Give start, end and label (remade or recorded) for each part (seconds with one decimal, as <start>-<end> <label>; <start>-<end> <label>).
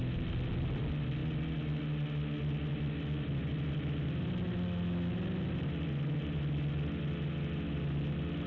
0.0-8.5 recorded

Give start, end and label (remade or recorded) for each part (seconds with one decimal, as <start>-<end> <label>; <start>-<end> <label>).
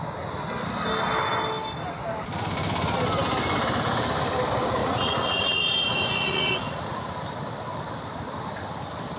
0.0-4.8 recorded; 4.8-7.1 remade; 7.1-9.2 recorded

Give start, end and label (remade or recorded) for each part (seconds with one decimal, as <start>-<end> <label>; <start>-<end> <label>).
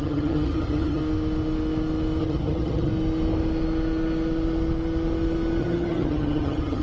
0.0-1.0 remade; 1.0-2.2 recorded; 2.2-2.9 remade; 2.9-5.6 recorded; 5.6-6.8 remade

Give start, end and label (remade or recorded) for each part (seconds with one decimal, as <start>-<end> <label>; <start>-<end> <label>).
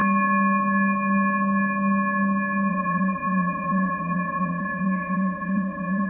0.0-2.7 recorded; 2.7-6.1 remade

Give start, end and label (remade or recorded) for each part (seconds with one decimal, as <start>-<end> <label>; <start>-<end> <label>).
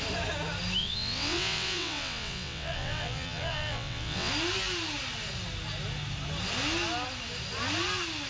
0.0-0.8 recorded; 0.8-4.3 remade; 4.3-8.3 recorded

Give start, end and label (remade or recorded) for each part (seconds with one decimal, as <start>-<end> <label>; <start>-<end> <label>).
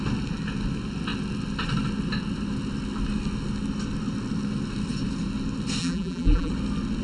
0.0-5.8 recorded; 5.8-6.5 remade; 6.5-7.0 recorded